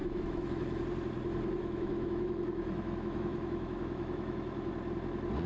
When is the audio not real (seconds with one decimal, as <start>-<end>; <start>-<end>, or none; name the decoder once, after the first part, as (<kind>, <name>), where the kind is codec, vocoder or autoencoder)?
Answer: 0.0-0.8 (autoencoder, DAC-VAE); 1.6-4.7